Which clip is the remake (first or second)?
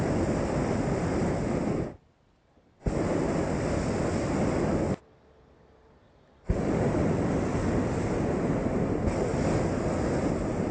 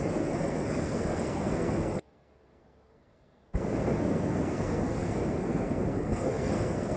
second